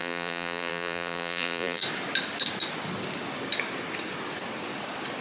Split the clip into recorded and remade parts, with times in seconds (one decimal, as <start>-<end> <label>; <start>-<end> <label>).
0.0-1.8 remade; 1.8-5.2 recorded